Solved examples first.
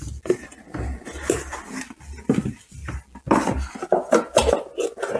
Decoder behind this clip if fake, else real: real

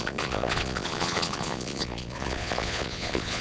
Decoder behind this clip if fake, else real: fake, vocoder, Vocos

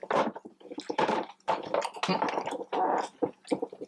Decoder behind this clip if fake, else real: real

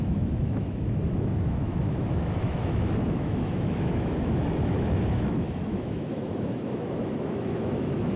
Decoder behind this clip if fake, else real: fake, autoencoder, DAC-VAE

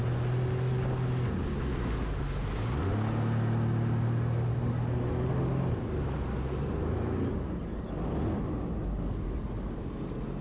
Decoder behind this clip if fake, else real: real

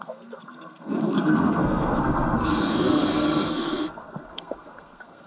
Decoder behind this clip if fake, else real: fake, codec, SNAC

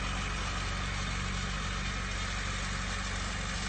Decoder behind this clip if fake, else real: real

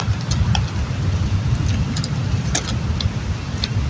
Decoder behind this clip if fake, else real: real